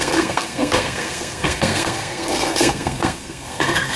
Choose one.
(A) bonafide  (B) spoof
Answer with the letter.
B